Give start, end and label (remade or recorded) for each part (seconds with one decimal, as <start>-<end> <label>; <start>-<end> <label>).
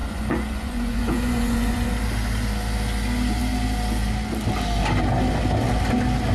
0.0-1.9 remade; 1.9-6.3 recorded